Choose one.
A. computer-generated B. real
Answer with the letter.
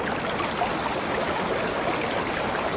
B